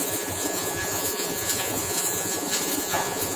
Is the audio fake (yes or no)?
yes